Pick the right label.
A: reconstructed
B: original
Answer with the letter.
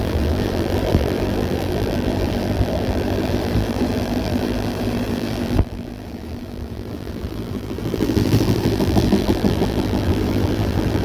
A